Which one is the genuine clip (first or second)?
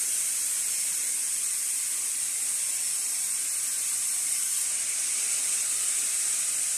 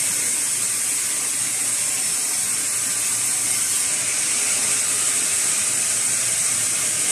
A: second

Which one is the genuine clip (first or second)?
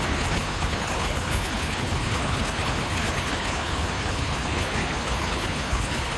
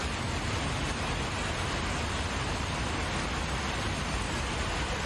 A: second